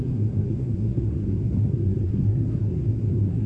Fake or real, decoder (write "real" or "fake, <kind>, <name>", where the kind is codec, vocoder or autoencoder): fake, codec, SNAC